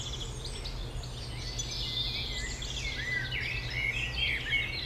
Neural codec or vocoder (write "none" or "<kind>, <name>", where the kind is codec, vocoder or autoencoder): none